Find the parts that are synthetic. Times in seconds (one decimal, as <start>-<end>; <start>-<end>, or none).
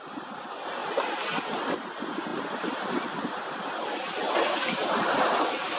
none